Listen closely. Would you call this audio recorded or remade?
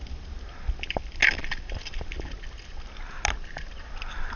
recorded